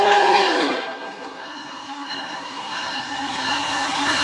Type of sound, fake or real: fake